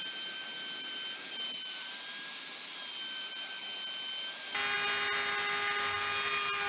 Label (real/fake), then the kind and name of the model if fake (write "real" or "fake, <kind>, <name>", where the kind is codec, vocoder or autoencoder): real